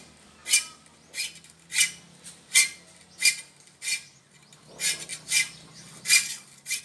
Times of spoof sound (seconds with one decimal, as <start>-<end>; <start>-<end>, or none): 5.1-6.8